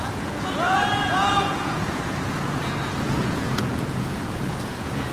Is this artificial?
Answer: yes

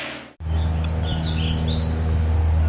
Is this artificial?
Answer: no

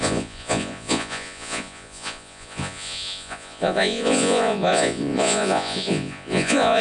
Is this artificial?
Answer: yes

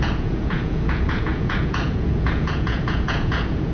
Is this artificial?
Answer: yes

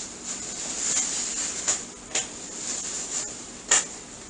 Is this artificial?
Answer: no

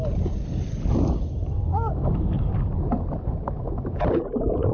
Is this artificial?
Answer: no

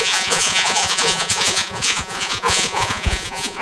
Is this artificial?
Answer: yes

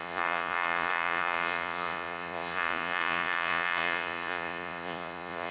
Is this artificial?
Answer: yes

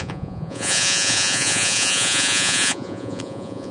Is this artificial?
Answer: yes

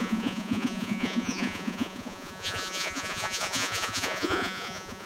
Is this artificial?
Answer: yes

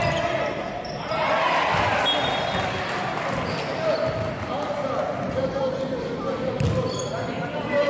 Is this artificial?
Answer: no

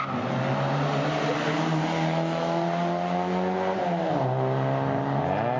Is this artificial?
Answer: no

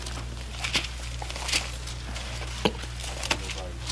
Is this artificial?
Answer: no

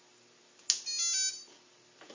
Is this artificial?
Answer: no